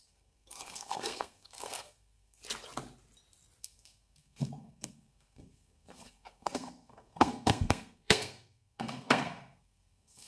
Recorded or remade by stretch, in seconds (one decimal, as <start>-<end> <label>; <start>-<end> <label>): 0.0-2.4 remade; 2.4-3.6 recorded; 3.6-10.3 remade